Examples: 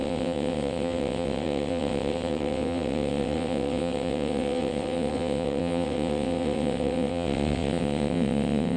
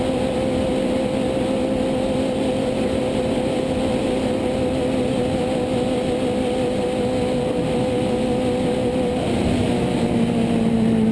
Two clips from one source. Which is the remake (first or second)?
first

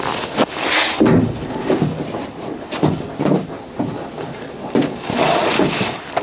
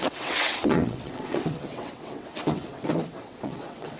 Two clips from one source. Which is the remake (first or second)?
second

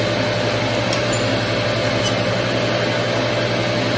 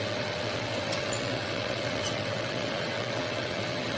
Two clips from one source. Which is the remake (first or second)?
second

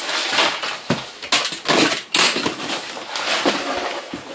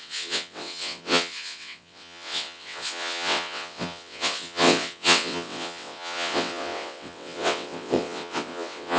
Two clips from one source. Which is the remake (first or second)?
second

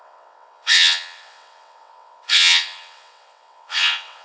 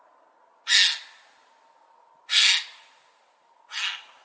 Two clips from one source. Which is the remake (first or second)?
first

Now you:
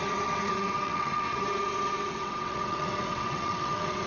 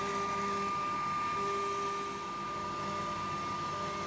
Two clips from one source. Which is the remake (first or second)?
first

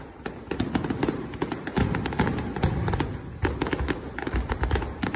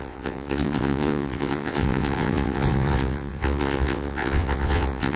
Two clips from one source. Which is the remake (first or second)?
second